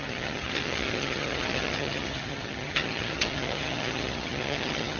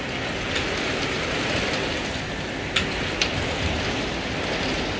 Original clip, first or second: second